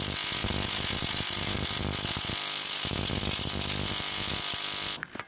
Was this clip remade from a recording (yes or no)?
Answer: no